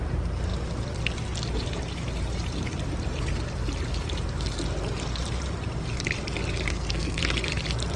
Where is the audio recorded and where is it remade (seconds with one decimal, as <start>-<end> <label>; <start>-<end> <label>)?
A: 0.0-6.7 recorded; 6.7-7.2 remade; 7.2-8.0 recorded